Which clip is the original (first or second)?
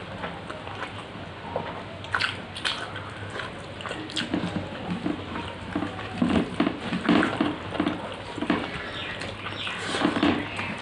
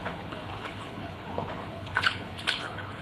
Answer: first